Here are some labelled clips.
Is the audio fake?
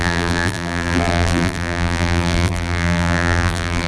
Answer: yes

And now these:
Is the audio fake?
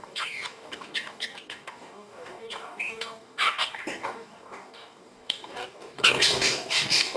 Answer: yes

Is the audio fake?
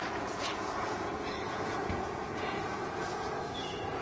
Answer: yes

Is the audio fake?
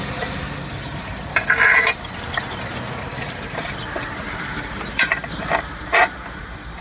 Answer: yes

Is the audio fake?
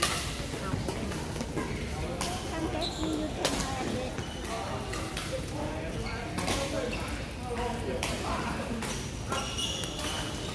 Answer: no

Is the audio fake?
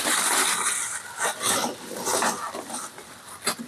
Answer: no